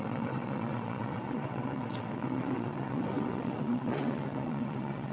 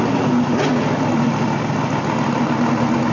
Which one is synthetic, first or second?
first